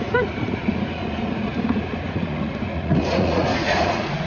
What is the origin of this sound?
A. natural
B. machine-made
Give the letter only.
B